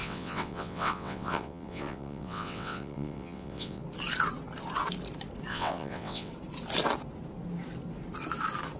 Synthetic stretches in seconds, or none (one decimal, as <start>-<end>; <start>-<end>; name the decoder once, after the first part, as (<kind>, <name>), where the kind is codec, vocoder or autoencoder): 0.0-3.8 (vocoder, WaveNeXt); 5.5-6.3